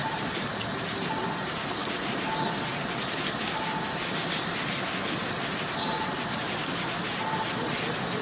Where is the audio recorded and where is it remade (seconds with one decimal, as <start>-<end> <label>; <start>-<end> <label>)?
0.0-1.8 remade; 1.8-8.2 recorded